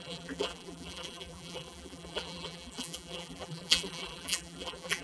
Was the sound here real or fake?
fake